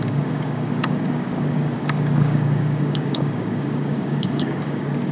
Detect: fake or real fake